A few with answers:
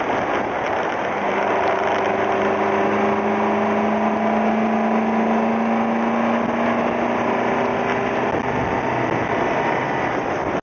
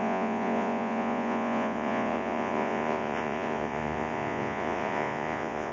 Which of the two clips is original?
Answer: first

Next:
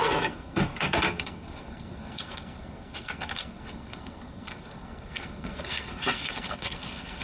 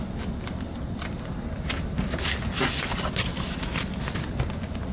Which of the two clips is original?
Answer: second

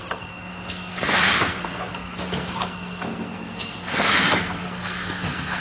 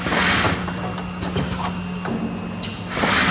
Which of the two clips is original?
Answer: second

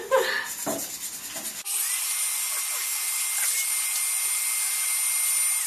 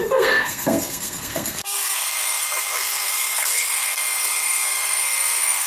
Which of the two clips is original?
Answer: first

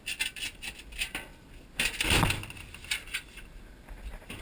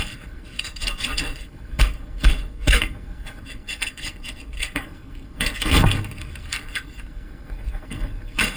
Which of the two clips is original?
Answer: first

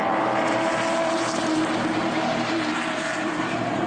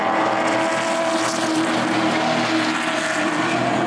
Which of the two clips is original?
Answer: second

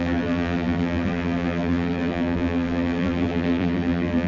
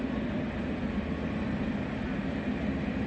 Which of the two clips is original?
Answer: second